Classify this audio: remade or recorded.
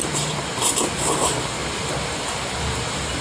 remade